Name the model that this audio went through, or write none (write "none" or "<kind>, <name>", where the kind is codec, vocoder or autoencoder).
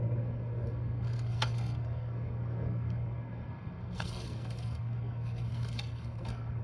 codec, SNAC